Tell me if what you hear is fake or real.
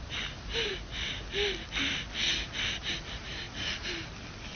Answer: real